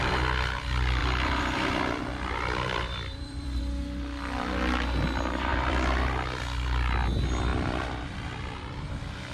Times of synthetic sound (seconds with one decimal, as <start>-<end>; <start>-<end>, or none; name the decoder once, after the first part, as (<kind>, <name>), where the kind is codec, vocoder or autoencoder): 1.0-3.6 (vocoder, BigVGAN v2); 5.5-6.4; 7.5-8.9

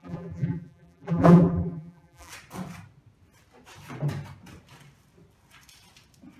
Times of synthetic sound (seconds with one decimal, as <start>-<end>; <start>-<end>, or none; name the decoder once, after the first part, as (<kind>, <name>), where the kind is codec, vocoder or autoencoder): 0.0-2.3 (vocoder, BigVGAN v2)